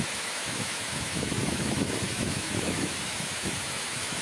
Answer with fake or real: fake